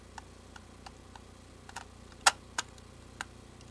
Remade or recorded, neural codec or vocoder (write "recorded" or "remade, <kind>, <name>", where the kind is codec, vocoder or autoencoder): recorded